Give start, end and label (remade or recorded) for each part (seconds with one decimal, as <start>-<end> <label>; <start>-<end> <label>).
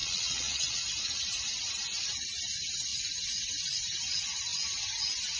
0.0-0.8 remade; 0.8-5.4 recorded